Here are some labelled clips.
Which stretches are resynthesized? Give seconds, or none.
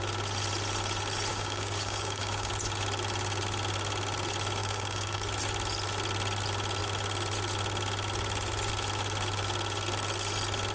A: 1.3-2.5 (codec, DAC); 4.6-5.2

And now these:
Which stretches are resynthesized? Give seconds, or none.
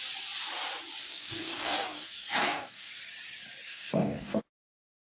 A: 1.0-2.9 (codec, DAC); 3.7-4.4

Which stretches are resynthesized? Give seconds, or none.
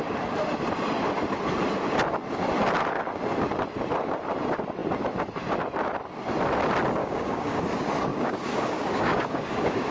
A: 7.0-7.6 (codec, DAC); 8.1-9.9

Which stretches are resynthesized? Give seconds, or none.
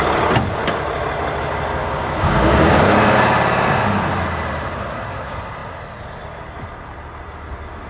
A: 1.8-2.8 (codec, DAC)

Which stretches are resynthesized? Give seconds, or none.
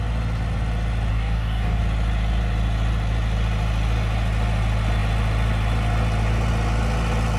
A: 1.1-1.8 (codec, DAC)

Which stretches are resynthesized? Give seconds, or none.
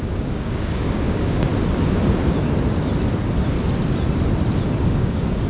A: 0.0-1.5 (codec, DAC); 4.8-5.5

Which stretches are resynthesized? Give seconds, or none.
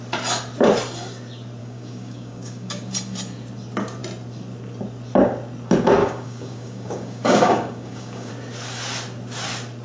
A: 1.6-2.9 (codec, DAC); 6.0-8.3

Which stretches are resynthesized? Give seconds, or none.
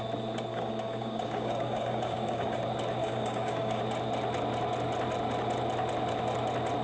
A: 0.5-2.6 (codec, DAC); 3.0-3.8